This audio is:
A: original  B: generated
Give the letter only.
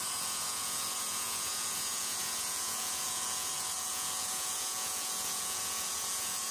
B